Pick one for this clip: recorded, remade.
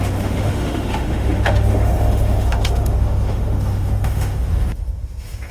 remade